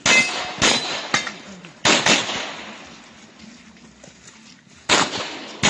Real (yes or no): yes